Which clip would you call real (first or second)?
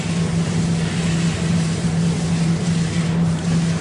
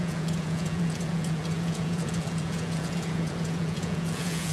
first